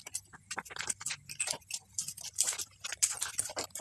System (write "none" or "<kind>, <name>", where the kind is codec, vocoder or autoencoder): none